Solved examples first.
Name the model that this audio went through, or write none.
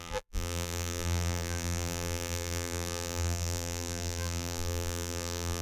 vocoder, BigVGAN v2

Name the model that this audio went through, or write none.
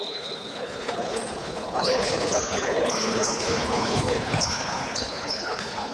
codec, HILCodec